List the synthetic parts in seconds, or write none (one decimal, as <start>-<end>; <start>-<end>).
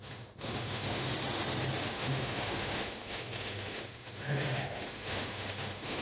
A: 0.0-1.1; 1.9-6.0